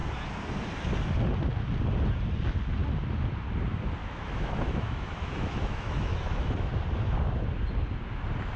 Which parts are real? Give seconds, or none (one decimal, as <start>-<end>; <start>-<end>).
0.0-4.0; 6.7-8.6